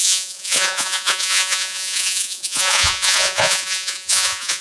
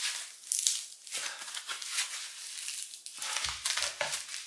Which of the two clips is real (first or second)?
second